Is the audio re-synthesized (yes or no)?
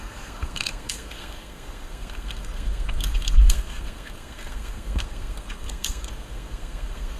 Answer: yes